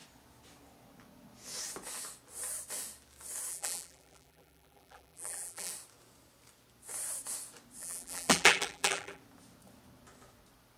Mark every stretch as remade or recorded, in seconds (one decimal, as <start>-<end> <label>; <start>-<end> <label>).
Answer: 0.0-3.5 recorded; 3.5-5.7 remade; 5.7-7.8 recorded; 7.8-9.2 remade; 9.2-10.8 recorded